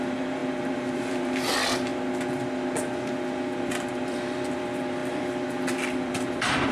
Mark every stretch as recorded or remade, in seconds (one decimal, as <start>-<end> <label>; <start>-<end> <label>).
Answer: 0.0-1.9 remade; 1.9-3.6 recorded; 3.6-6.7 remade